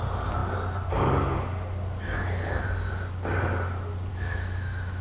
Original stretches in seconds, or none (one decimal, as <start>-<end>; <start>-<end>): 0.0-4.1